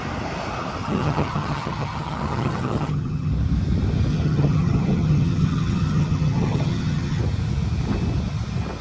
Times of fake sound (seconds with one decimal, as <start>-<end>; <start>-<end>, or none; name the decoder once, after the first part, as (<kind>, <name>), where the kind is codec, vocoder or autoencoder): 0.8-3.3 (vocoder, HiFi-GAN); 4.1-7.2